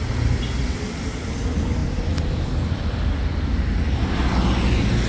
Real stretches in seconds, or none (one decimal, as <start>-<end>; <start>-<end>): 0.0-5.1